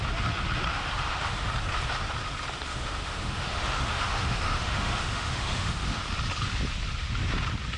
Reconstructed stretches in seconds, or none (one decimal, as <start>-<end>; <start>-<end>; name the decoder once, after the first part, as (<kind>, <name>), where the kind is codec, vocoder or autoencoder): 0.7-1.5 (autoencoder, DAC-VAE); 2.7-6.0